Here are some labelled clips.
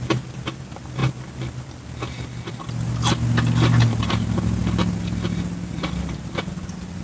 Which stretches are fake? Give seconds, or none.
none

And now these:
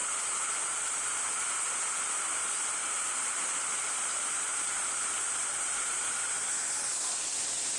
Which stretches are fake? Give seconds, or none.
none

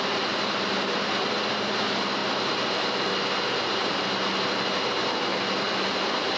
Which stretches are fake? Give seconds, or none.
none

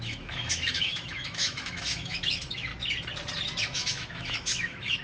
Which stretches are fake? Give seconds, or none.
0.0-2.7 (autoencoder, DAC-VAE); 3.6-5.0

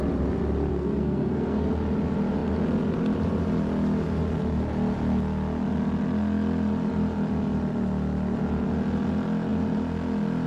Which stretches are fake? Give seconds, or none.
0.7-1.7 (codec, SNAC)